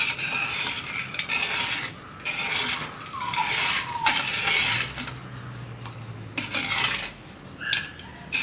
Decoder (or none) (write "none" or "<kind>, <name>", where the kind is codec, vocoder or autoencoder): none